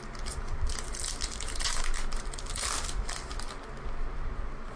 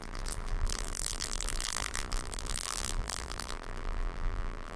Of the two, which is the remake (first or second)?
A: second